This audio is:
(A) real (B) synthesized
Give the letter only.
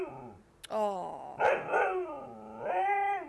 A